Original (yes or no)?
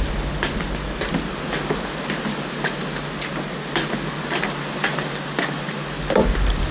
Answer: yes